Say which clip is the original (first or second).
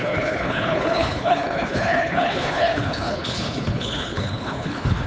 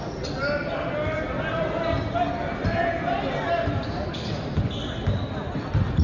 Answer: second